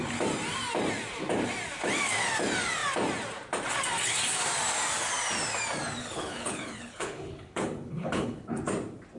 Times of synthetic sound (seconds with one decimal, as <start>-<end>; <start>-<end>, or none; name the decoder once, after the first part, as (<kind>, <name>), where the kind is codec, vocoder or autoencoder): 6.0-8.6 (codec, HILCodec)